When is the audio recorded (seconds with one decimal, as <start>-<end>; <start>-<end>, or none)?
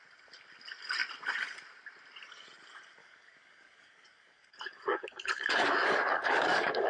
0.0-3.0